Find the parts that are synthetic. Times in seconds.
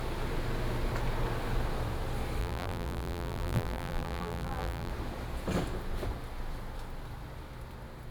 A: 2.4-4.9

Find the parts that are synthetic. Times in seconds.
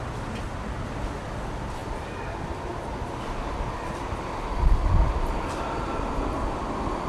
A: none